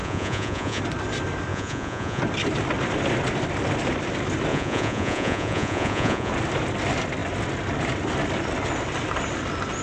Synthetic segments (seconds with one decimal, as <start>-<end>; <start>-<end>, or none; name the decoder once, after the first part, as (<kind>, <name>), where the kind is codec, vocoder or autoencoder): 0.0-0.8 (vocoder, Vocos); 1.5-2.2; 4.5-6.3